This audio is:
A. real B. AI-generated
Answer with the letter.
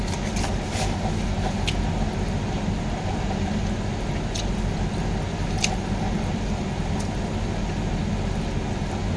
A